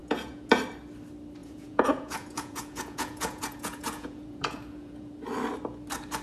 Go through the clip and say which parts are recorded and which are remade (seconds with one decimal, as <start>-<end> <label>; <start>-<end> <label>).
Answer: 0.0-0.6 remade; 0.6-1.4 recorded; 1.4-5.1 remade; 5.1-6.2 recorded